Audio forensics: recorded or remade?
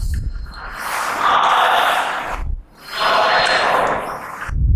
recorded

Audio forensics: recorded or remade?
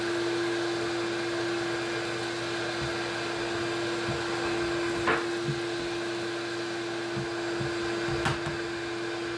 recorded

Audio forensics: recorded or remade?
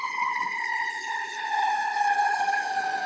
remade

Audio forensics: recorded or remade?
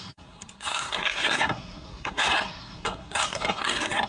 remade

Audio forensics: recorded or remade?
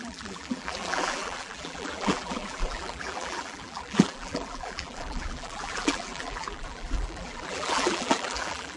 remade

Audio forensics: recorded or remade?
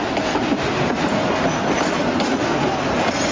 recorded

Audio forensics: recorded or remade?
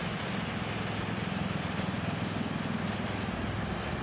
recorded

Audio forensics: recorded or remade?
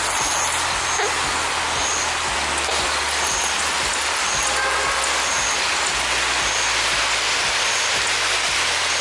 recorded